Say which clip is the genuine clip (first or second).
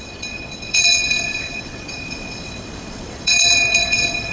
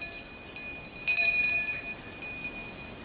second